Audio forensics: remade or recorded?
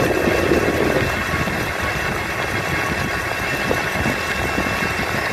recorded